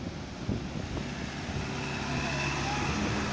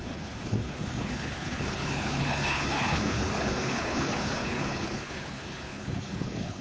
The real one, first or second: first